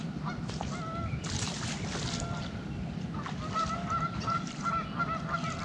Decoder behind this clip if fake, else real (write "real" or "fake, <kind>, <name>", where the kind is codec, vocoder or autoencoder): real